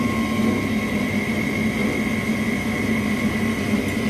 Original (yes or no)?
yes